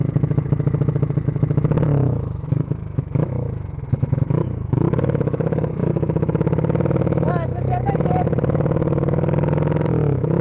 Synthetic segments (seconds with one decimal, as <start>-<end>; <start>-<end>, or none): 0.0-10.4